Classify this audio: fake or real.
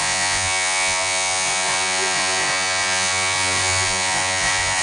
fake